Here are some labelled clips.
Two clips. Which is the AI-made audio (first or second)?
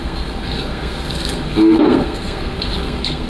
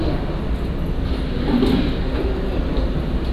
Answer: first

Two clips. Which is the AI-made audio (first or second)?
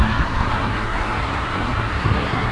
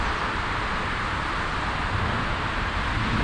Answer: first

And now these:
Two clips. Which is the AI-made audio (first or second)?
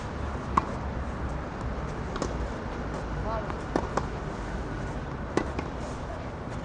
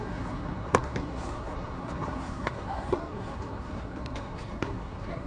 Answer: second